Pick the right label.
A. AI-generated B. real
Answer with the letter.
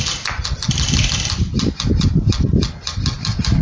B